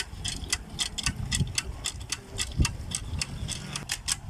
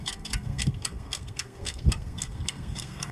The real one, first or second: first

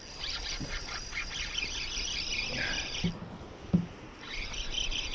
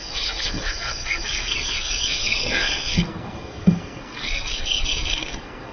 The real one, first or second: first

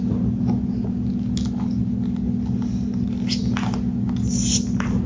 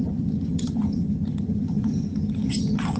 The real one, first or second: first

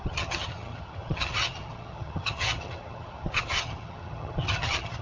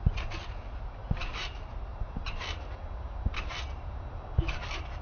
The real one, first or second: second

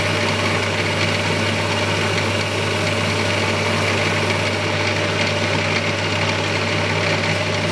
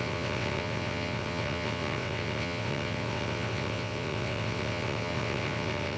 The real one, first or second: first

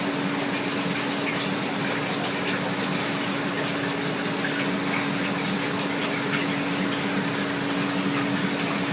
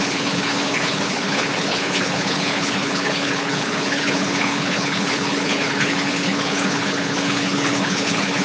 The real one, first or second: first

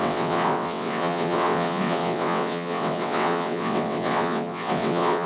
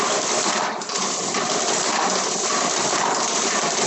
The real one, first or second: second